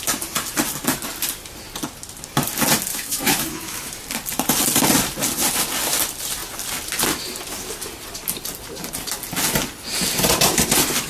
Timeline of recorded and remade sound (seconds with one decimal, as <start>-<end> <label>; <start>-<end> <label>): 0.0-2.9 recorded; 2.9-3.9 remade; 3.9-11.1 recorded